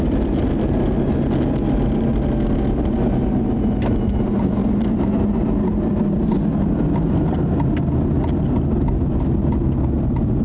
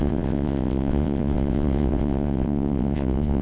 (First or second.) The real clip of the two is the first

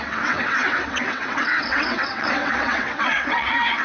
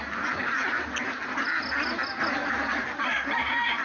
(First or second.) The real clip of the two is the second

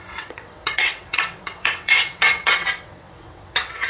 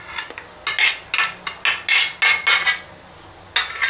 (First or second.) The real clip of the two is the second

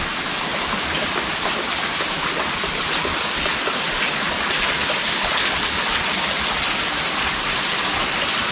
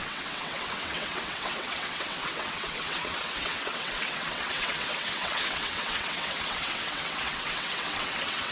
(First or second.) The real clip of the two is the first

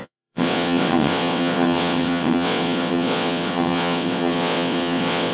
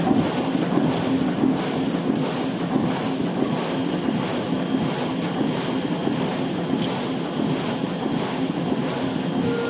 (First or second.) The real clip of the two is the second